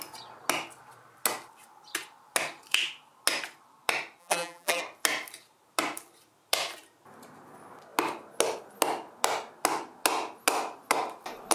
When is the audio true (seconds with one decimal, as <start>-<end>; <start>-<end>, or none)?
0.0-4.2; 4.8-11.5